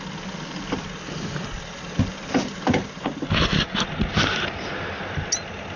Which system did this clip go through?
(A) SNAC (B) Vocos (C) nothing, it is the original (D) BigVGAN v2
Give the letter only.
C